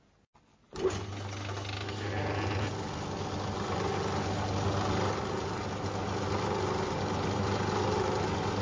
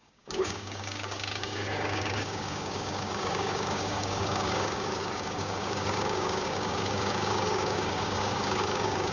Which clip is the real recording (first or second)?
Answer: first